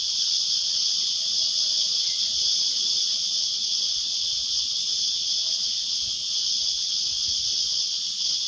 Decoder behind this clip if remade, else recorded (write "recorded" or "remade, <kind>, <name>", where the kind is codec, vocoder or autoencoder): remade, vocoder, WaveNeXt